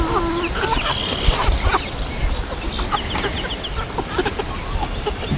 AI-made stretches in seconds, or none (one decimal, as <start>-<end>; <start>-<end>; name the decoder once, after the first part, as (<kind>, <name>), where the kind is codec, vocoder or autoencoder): none